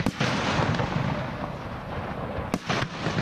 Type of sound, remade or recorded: recorded